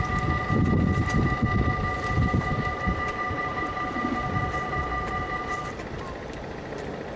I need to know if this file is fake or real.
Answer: real